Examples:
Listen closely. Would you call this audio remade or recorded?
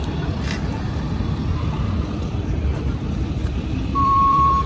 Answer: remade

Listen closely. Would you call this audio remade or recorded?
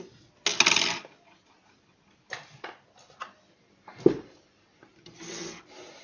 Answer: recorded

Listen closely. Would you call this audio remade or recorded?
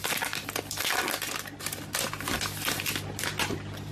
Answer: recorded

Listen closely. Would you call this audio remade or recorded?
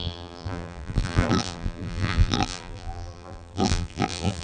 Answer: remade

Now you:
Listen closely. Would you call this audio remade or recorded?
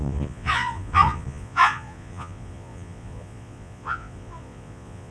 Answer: remade